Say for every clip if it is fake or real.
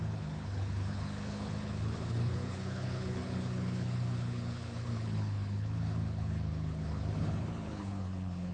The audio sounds fake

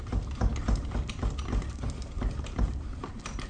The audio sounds real